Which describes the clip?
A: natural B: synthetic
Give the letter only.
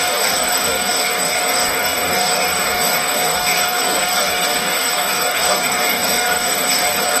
B